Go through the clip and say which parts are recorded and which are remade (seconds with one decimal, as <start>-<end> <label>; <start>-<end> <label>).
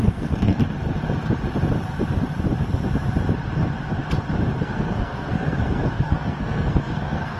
0.0-0.6 remade; 0.6-4.6 recorded; 4.6-7.4 remade